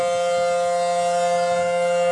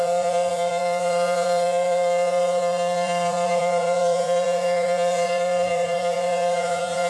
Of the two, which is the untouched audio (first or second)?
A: first